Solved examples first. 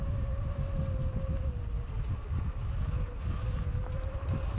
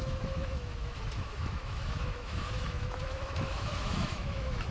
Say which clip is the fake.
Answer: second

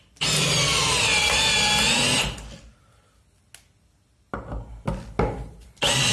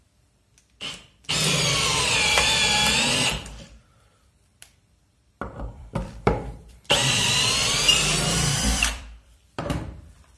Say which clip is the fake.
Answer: second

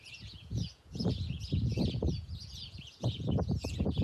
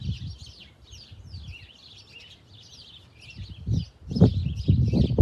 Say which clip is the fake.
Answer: first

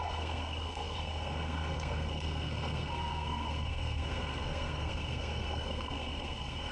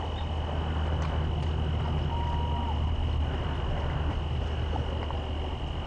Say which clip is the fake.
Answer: first